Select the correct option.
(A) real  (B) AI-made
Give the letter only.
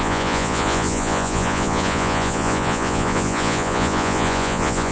B